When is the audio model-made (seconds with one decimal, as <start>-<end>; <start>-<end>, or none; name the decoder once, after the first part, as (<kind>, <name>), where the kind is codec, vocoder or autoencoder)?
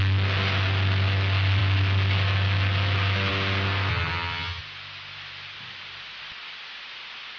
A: 3.9-4.6 (vocoder, HiFi-GAN)